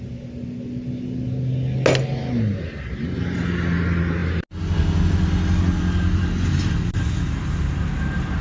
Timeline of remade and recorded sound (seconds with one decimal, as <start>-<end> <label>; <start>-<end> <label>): 0.0-8.4 recorded